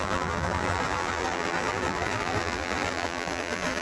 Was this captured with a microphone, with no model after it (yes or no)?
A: no